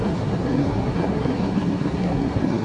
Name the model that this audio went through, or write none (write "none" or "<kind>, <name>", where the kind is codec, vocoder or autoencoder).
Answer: codec, SNAC